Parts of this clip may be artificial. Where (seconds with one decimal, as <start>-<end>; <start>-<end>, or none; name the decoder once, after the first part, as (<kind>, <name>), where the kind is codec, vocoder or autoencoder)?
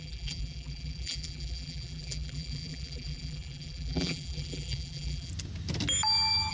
0.0-5.3 (vocoder, BigVGAN v2)